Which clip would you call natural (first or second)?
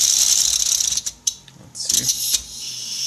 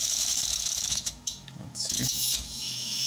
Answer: first